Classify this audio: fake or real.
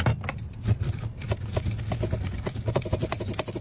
real